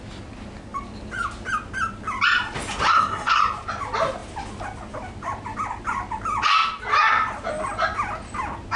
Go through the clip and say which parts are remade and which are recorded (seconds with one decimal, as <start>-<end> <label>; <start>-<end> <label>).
0.0-2.9 recorded; 2.9-3.4 remade; 3.4-8.8 recorded